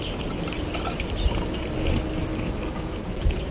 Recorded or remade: recorded